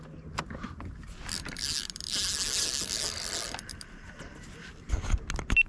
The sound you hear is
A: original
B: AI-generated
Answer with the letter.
A